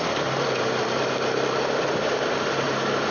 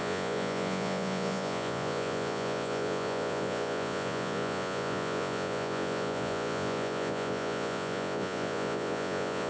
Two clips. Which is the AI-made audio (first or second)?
second